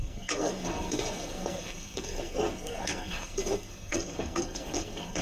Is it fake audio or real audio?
fake